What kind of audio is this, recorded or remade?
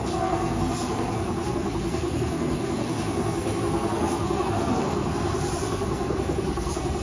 remade